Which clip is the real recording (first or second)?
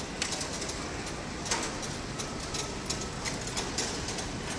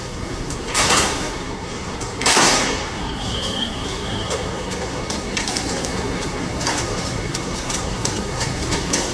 first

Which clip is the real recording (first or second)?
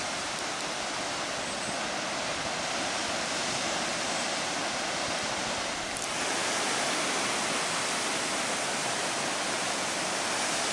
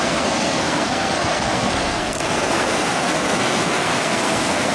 first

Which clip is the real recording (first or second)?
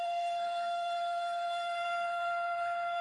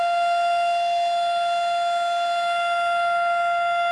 second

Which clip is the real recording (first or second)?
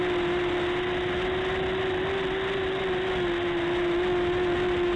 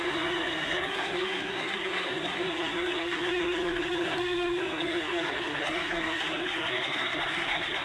first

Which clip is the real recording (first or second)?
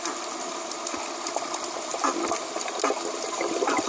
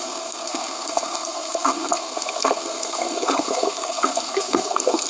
first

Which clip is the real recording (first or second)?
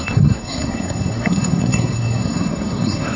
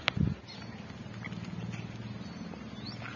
second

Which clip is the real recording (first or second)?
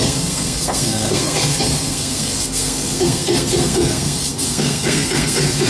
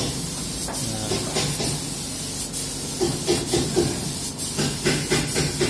second